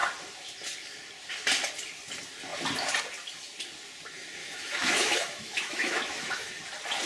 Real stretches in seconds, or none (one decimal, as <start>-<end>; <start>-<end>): 0.0-4.4; 6.5-7.1

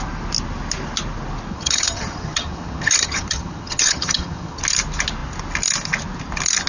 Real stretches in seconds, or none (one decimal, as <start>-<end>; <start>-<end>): 0.0-1.5; 4.6-6.7

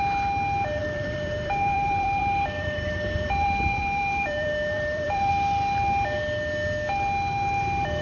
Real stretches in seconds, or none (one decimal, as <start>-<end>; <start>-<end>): 0.0-0.8; 5.3-8.0